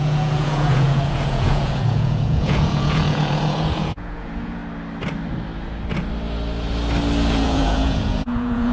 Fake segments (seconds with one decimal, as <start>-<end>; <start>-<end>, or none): 0.0-4.6; 7.3-8.7